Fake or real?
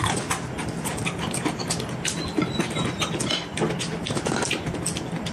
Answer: real